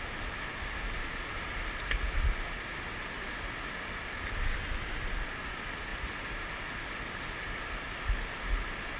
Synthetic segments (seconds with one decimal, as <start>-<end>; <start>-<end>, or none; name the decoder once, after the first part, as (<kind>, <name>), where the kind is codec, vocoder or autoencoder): none